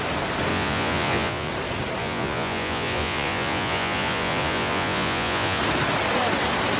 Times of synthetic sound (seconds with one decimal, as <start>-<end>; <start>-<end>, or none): 0.5-1.5; 2.0-5.6